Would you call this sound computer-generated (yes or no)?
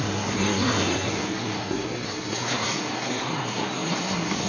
yes